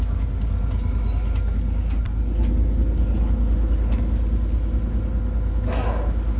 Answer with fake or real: real